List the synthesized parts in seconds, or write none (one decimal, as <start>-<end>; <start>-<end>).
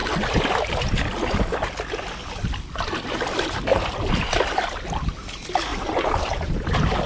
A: 5.7-6.6